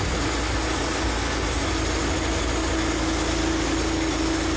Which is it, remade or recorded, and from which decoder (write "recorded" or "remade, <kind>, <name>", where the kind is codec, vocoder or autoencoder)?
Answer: recorded